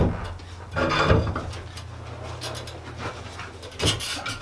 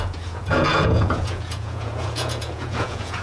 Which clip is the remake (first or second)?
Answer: second